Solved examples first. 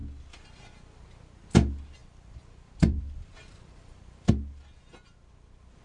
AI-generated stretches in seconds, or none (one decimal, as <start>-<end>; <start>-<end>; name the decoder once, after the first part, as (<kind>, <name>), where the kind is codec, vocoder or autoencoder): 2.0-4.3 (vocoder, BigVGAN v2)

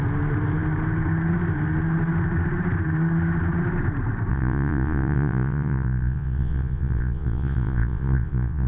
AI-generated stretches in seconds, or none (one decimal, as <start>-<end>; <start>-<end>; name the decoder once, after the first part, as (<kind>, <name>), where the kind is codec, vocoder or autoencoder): 4.3-8.7 (vocoder, Vocos)

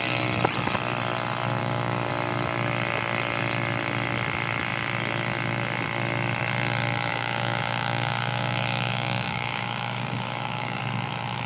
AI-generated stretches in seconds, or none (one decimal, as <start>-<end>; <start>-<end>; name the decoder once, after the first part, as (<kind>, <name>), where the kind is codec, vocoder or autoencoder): 1.6-2.1 (codec, DAC); 7.1-10.8

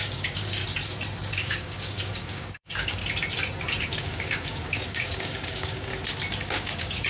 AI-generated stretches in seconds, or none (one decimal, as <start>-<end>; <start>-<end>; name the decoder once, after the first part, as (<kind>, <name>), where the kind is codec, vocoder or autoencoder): 0.0-0.6 (codec, DAC); 1.3-3.0; 3.8-5.9; 6.4-7.1

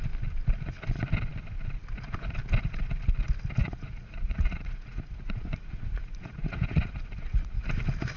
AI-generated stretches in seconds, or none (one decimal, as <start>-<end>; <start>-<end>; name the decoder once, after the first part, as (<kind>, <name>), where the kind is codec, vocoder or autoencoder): 3.6-7.7 (vocoder, Vocos)

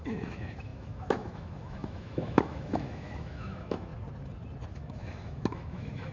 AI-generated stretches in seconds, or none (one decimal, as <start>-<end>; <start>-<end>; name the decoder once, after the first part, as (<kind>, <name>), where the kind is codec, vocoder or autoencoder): 0.0-3.9 (autoencoder, DAC-VAE); 4.7-6.1

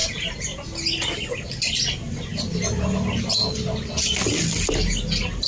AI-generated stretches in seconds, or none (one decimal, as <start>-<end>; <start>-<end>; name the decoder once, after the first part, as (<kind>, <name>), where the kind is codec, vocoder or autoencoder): 0.0-0.6 (vocoder, BigVGAN v2)

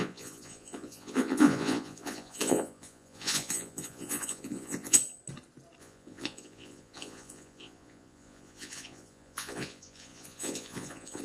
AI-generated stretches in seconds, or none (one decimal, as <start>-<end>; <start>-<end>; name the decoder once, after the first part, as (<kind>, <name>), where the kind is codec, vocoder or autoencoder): 0.0-5.0 (vocoder, Vocos); 5.8-11.2